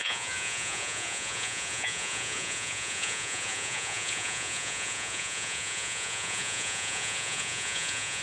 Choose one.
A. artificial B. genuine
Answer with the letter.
A